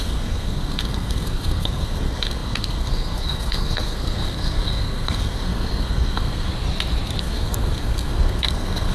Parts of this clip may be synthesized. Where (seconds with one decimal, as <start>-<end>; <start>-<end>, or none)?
0.0-6.5; 7.2-8.9